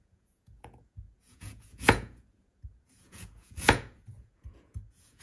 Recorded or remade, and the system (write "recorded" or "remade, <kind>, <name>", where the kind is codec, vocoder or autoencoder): remade, vocoder, Vocos